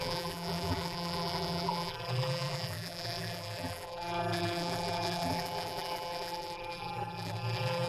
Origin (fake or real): fake